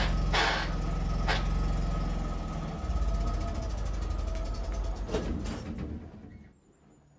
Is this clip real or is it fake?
real